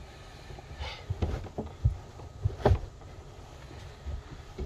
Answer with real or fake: real